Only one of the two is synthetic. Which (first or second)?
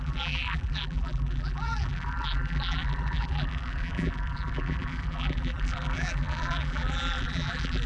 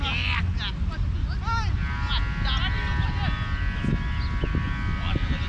first